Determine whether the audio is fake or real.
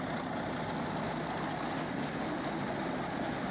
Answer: real